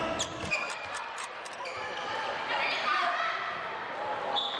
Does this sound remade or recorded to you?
recorded